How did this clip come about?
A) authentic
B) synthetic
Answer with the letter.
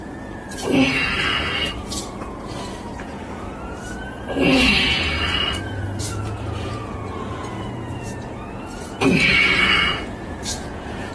B